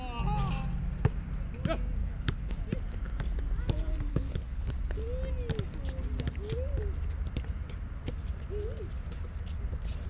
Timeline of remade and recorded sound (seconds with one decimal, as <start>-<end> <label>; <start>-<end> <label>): 0.0-2.0 recorded; 2.0-2.5 remade; 2.5-4.1 recorded; 4.1-4.7 remade; 4.7-10.1 recorded